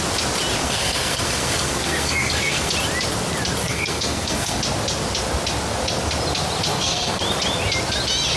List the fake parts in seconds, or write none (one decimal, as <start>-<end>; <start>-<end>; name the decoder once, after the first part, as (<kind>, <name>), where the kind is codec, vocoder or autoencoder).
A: 0.6-2.7 (codec, SNAC); 3.6-4.6; 6.7-7.2